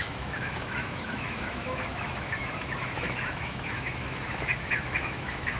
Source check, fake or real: fake